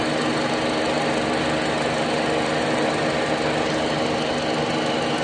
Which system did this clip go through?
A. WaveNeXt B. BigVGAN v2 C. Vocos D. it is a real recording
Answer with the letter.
D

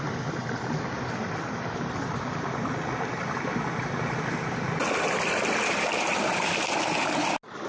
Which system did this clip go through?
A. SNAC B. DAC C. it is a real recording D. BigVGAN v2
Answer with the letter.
C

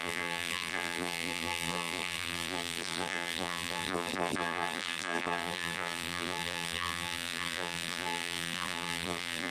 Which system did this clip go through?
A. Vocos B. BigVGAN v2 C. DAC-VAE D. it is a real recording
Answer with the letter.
B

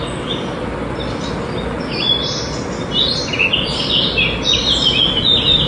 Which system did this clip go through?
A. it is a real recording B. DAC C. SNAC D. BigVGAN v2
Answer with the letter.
A